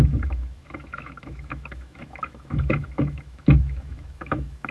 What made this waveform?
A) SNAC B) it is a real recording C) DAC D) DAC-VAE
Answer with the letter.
D